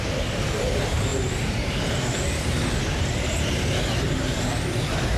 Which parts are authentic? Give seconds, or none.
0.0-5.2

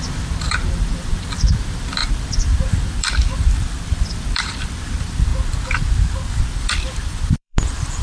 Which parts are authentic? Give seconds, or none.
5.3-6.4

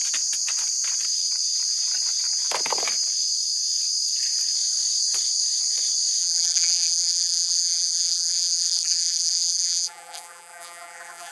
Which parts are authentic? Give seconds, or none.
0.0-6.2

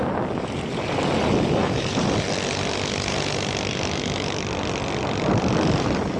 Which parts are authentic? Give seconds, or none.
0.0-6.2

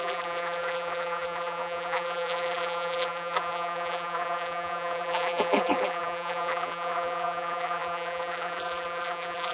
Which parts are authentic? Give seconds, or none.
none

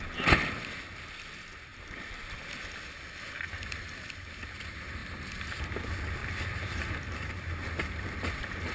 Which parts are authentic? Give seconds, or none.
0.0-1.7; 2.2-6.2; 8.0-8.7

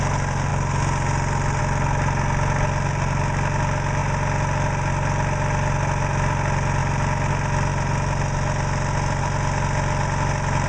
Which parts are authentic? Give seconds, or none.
0.0-4.0; 4.9-6.8; 7.3-10.7

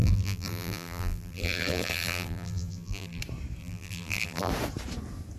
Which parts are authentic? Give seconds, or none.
3.2-3.6; 4.5-5.4